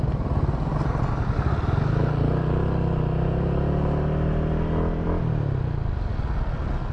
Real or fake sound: real